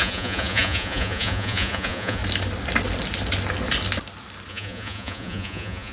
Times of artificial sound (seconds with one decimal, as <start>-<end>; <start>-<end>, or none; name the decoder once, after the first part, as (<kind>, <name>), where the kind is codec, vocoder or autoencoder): 0.0-2.2 (vocoder, Vocos); 4.5-5.9